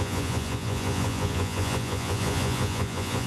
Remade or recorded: remade